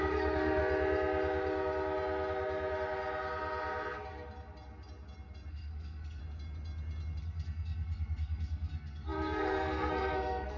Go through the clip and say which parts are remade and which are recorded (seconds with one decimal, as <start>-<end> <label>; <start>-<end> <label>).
0.0-0.6 remade; 0.6-5.5 recorded; 5.5-6.2 remade; 6.2-7.2 recorded; 7.2-10.6 remade